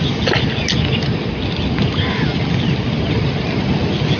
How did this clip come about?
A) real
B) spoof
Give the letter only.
A